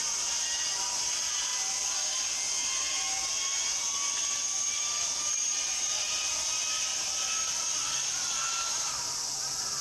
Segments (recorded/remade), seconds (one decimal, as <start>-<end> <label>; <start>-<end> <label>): 0.0-9.8 recorded